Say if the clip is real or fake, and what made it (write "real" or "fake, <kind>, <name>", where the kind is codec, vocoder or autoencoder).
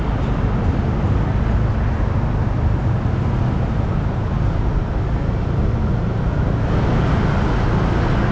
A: real